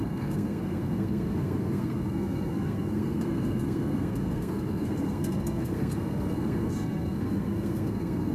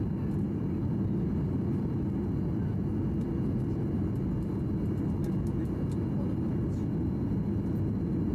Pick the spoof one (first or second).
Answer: first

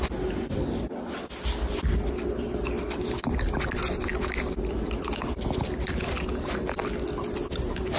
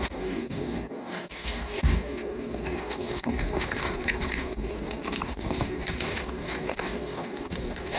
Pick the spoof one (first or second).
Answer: second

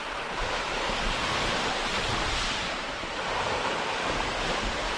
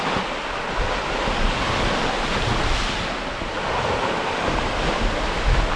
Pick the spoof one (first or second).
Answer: first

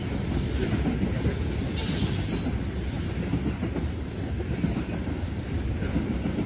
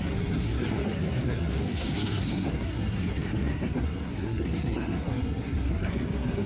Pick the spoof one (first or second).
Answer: second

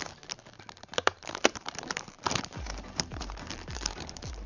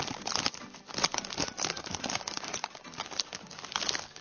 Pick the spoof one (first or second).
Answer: first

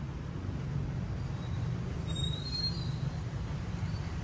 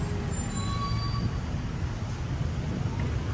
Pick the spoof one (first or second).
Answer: first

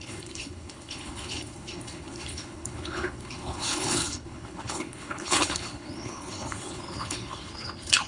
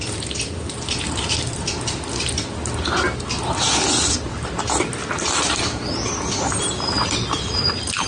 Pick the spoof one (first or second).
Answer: first